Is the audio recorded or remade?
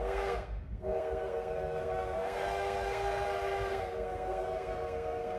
remade